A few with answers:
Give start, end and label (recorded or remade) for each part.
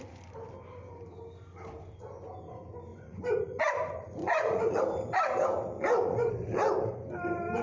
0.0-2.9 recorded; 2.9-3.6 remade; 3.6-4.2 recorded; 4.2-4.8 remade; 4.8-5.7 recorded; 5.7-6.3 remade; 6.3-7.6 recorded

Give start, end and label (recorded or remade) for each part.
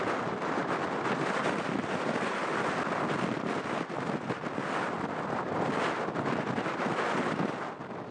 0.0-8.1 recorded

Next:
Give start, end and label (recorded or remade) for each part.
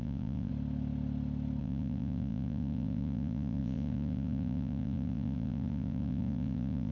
0.0-0.5 remade; 0.5-1.6 recorded; 1.6-6.9 remade